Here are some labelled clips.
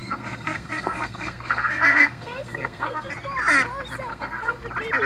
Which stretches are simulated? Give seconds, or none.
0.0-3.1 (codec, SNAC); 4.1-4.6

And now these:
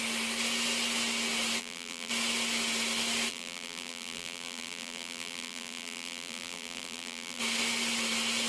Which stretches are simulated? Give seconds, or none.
1.6-2.1 (vocoder, BigVGAN v2); 3.3-7.4

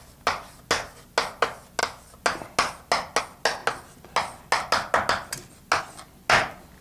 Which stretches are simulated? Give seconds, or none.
none